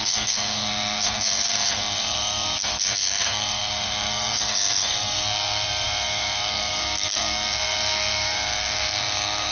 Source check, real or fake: fake